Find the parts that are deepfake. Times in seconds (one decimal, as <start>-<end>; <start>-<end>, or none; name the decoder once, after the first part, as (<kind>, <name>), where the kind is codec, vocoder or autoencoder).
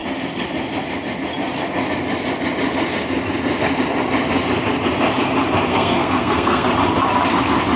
5.7-6.7 (codec, SNAC)